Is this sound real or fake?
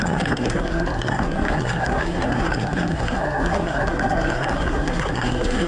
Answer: fake